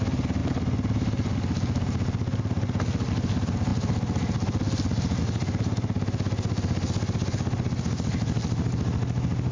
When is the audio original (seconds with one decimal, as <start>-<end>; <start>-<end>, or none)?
0.0-9.5